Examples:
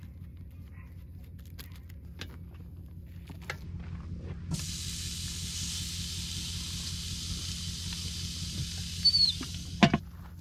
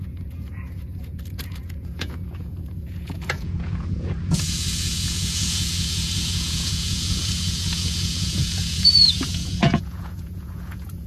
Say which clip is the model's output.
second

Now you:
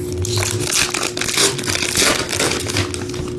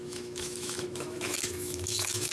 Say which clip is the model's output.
second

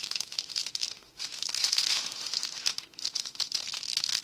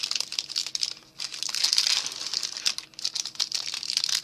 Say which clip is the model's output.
first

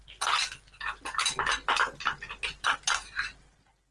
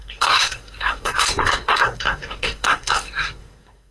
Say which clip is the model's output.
second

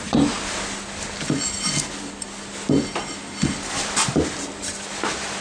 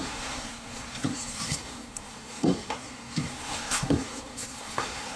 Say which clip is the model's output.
second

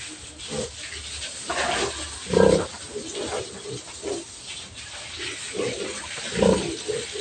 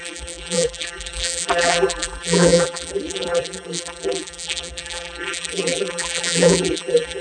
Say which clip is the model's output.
second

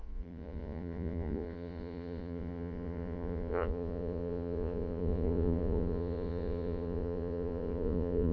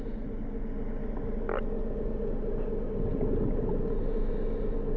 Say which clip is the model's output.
first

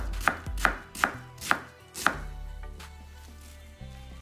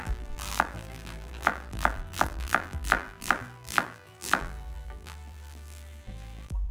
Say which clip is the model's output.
second